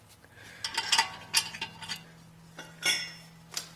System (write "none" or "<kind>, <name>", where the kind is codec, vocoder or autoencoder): none